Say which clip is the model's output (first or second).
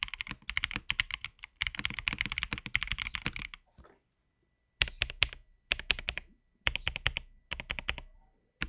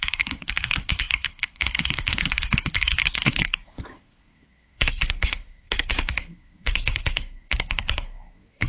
second